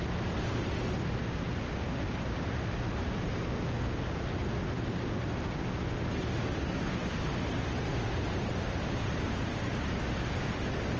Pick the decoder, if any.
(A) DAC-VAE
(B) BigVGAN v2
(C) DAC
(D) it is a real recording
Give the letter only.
D